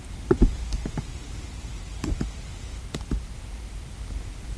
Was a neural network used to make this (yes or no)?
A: no